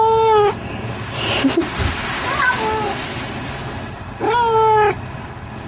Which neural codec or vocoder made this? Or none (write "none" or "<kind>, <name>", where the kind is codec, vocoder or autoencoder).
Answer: none